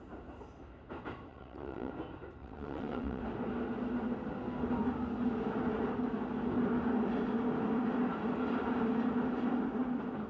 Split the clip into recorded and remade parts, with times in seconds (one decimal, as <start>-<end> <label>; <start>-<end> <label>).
0.0-1.3 recorded; 1.3-1.9 remade; 1.9-2.4 recorded; 2.4-3.2 remade; 3.2-10.3 recorded